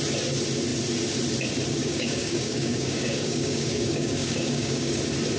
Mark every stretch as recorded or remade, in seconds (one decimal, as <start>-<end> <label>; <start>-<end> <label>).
0.0-1.8 recorded; 1.8-5.0 remade; 5.0-5.4 recorded